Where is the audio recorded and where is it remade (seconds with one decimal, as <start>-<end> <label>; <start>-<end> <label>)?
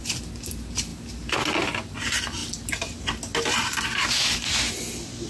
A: 0.0-5.3 recorded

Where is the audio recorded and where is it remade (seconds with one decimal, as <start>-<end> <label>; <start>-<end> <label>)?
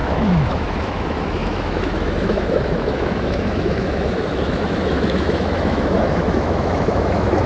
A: 0.0-7.5 remade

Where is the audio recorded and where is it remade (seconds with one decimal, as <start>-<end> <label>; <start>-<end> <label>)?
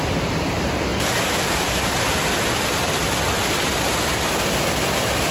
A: 0.0-5.3 recorded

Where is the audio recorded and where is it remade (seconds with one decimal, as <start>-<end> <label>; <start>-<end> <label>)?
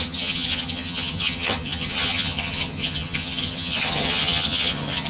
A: 0.0-5.1 remade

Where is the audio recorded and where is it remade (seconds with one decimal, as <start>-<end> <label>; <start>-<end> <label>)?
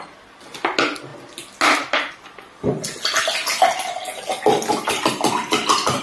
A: 0.0-6.0 recorded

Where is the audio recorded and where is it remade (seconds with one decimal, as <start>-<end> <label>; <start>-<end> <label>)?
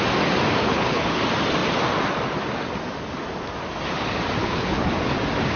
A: 0.0-0.6 recorded; 0.6-1.2 remade; 1.2-4.4 recorded; 4.4-4.9 remade; 4.9-5.6 recorded